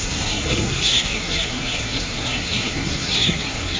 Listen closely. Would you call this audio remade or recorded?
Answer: remade